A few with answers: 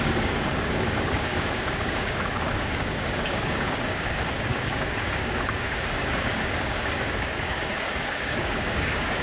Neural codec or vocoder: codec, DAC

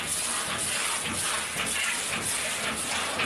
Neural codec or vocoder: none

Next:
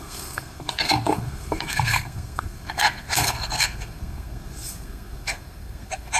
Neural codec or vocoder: codec, SNAC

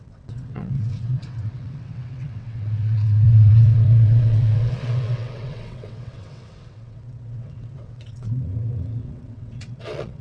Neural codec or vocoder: vocoder, WaveNeXt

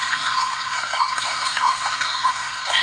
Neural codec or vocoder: codec, SNAC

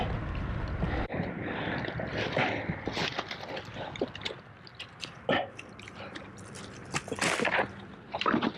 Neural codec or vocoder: none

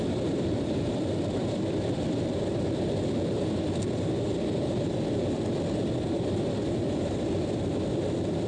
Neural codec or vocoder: vocoder, BigVGAN v2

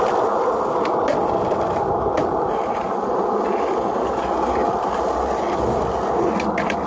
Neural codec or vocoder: none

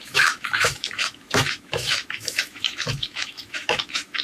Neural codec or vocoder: autoencoder, DAC-VAE